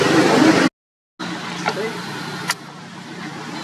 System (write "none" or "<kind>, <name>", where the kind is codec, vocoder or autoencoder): none